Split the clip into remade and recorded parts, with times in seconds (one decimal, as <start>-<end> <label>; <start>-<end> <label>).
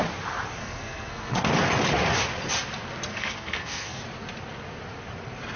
0.0-0.6 recorded; 0.6-1.4 remade; 1.4-3.1 recorded; 3.1-4.0 remade; 4.0-5.6 recorded